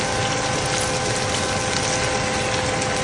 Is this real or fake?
real